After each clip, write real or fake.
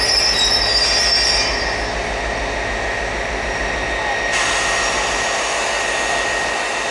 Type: real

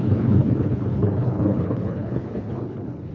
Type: fake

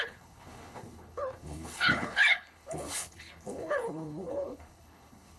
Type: fake